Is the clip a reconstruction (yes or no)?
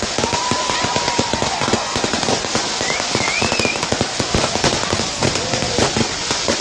yes